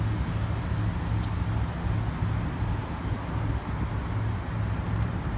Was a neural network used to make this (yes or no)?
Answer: no